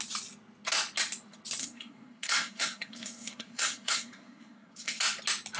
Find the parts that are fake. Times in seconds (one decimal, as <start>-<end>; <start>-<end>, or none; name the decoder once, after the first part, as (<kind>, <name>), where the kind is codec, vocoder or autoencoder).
1.6-5.0 (codec, SNAC)